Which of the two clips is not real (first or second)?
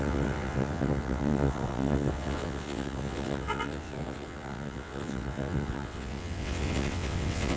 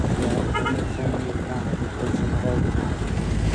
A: first